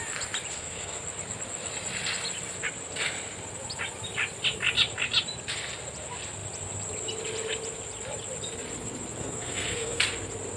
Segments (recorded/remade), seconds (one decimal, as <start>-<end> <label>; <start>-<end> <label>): 0.0-0.5 recorded; 0.5-1.0 remade; 1.0-9.2 recorded; 9.2-10.0 remade; 10.0-10.6 recorded